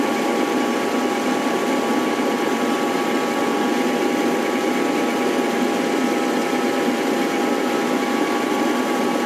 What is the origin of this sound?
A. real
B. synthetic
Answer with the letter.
A